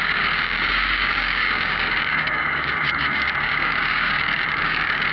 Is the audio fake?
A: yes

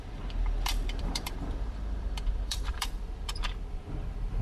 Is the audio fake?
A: yes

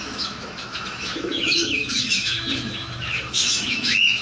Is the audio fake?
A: yes